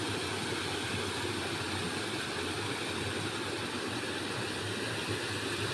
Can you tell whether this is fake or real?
real